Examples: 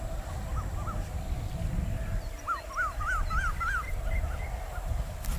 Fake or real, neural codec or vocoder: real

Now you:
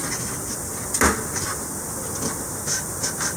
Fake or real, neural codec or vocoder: real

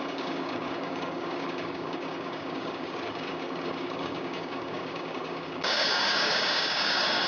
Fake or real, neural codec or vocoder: fake, codec, DAC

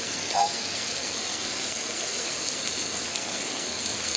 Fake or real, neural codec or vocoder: fake, codec, SNAC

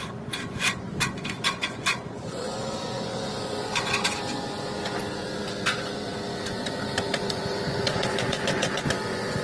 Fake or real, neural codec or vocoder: fake, vocoder, Vocos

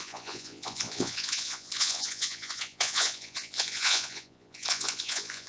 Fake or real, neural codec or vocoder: fake, vocoder, Vocos